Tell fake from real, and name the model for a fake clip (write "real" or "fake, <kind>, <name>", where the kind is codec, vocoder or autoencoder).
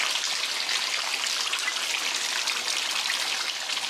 real